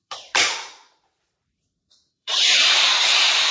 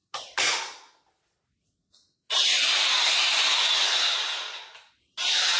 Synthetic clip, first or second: first